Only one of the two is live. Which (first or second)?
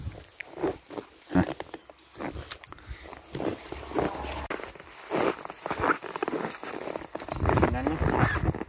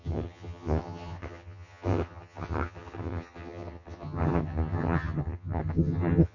first